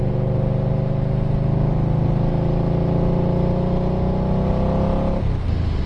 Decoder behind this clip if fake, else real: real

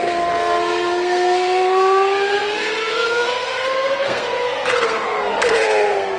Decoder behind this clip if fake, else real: fake, codec, SNAC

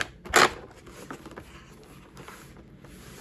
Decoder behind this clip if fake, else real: real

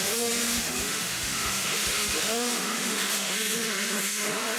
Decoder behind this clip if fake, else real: fake, autoencoder, DAC-VAE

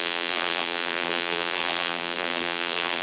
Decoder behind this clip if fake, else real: fake, vocoder, BigVGAN v2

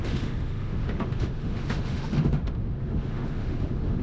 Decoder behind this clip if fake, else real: fake, autoencoder, DAC-VAE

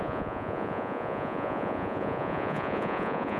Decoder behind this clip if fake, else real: fake, vocoder, Vocos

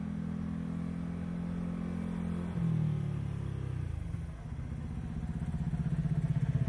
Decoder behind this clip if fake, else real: real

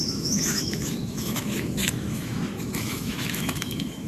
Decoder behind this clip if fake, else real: fake, autoencoder, DAC-VAE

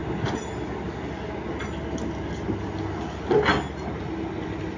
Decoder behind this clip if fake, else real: real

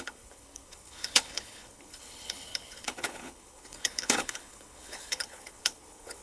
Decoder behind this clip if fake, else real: fake, codec, HILCodec